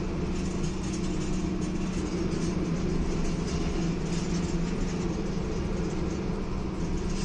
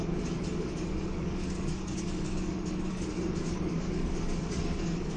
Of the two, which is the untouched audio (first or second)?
first